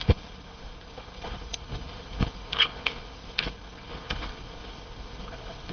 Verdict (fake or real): fake